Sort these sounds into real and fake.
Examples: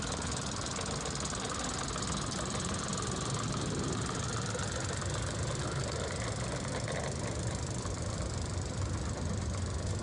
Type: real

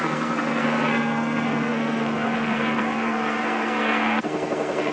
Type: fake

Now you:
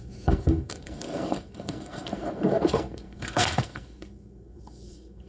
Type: fake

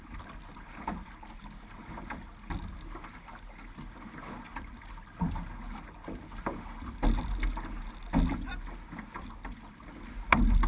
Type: real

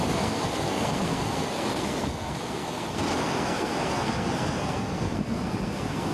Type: fake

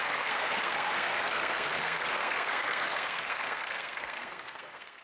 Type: fake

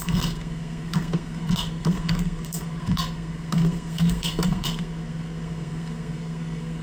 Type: fake